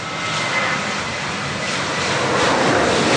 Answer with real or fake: real